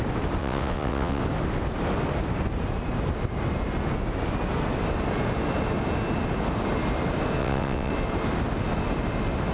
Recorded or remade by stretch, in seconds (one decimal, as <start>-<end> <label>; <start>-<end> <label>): 0.0-0.4 recorded; 0.4-1.2 remade; 1.2-7.4 recorded; 7.4-7.9 remade; 7.9-9.5 recorded